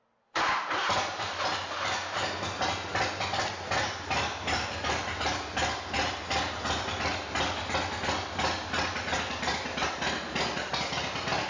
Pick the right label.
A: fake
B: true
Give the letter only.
B